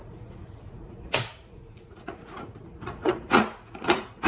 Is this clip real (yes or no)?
no